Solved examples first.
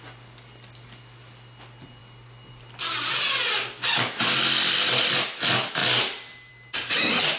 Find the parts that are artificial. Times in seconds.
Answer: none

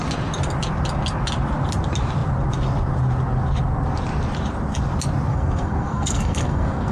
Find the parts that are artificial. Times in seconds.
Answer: 5.3-6.9 (codec, SNAC)

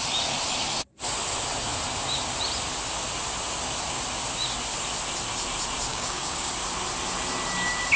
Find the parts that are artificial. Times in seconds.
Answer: 5.9-6.5 (codec, DAC)